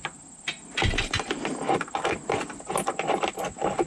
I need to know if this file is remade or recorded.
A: recorded